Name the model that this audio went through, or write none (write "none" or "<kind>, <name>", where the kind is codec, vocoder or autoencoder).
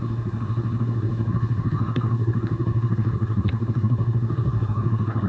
codec, SNAC